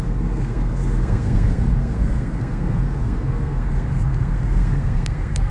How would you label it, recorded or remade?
remade